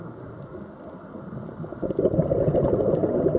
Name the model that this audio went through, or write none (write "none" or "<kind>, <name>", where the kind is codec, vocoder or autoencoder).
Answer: none